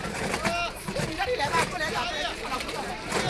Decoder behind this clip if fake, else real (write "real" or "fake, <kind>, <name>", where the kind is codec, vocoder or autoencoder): fake, vocoder, BigVGAN v2